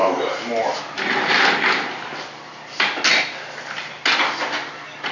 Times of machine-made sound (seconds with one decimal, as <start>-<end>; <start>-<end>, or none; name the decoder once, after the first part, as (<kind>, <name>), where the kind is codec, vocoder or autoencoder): none